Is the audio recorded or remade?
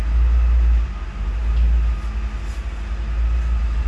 recorded